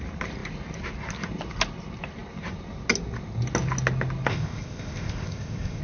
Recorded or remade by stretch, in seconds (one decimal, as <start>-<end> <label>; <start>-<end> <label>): 0.0-4.3 recorded; 4.3-5.8 remade

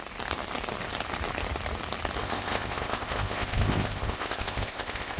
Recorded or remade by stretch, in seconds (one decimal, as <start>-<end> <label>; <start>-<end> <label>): 0.0-2.2 recorded; 2.2-5.2 remade

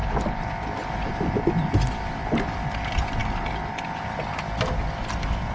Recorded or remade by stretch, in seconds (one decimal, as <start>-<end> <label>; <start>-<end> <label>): 0.0-5.5 recorded

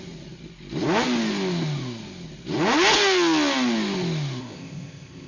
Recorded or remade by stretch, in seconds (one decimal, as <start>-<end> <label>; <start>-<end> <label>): 0.0-4.4 recorded; 4.4-5.3 remade